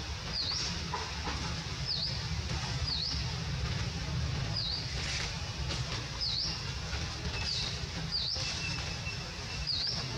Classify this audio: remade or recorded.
recorded